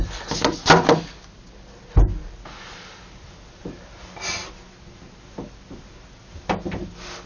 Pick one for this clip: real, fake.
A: real